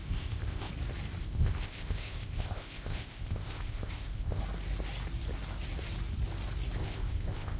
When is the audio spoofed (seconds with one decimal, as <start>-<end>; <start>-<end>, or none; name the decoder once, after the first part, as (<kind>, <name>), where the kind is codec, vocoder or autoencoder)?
0.0-0.7 (codec, ZipCodec); 1.2-4.4; 6.8-7.6